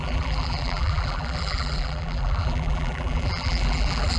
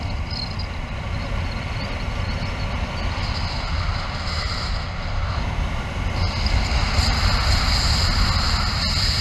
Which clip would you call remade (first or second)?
first